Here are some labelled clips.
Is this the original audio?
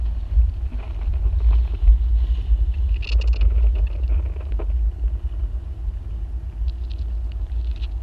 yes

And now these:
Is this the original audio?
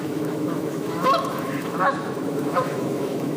no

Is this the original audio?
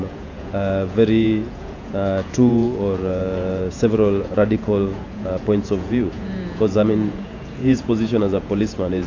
no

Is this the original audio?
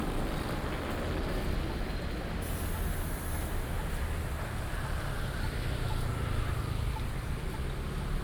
yes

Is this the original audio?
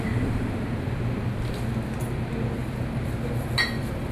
yes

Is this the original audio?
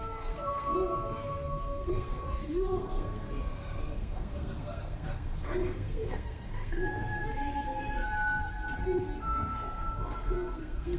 no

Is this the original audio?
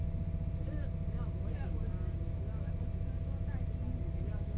yes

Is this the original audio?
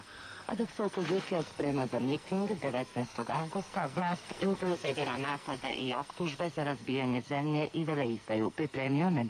no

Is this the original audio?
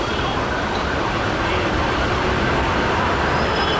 no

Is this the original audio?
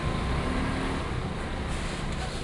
yes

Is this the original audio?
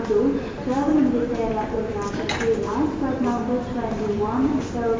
yes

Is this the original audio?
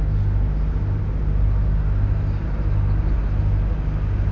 yes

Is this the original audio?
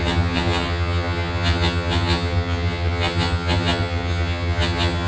no